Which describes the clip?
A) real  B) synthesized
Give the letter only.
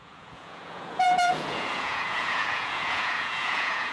B